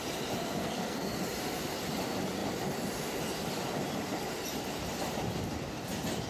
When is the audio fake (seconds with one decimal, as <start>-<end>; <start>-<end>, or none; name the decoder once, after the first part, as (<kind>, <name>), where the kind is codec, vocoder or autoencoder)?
0.6-1.2 (codec, SNAC)